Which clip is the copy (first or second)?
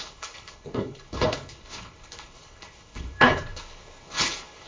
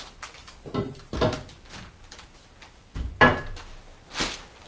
first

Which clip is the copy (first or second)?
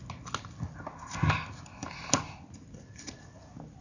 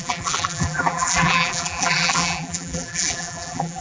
second